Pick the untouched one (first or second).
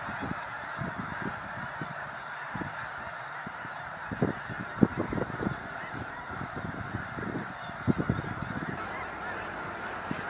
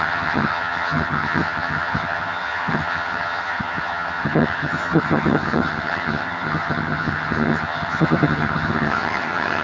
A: first